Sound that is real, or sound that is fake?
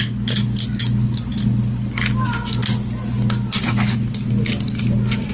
real